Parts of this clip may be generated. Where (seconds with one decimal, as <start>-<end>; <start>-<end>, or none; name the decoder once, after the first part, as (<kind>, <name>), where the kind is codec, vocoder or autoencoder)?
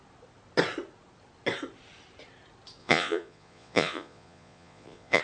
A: 2.8-5.2 (vocoder, Vocos)